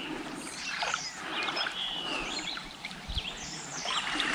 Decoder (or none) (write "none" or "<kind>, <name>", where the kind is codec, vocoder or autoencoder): vocoder, BigVGAN v2